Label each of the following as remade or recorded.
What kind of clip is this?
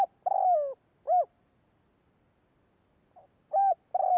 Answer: recorded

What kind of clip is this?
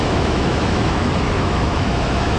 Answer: remade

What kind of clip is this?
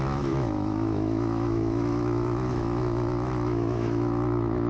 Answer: remade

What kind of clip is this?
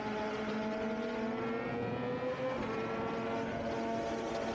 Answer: recorded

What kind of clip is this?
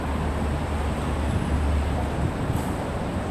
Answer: recorded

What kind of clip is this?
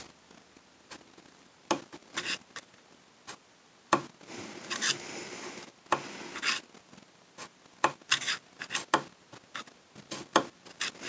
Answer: recorded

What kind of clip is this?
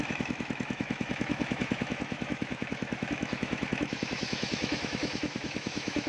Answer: remade